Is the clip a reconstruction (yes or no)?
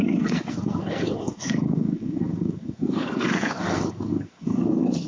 yes